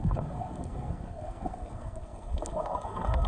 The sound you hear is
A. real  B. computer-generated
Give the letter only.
B